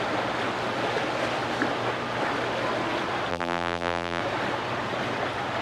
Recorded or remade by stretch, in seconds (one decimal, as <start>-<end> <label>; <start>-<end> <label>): 0.0-3.3 recorded; 3.3-4.2 remade; 4.2-5.6 recorded